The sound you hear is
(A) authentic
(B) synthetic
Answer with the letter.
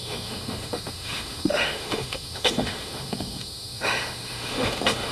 B